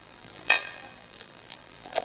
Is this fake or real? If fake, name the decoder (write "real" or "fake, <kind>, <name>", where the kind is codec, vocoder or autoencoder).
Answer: fake, vocoder, BigVGAN v2